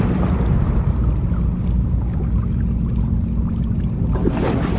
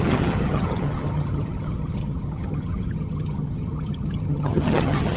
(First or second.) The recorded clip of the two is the first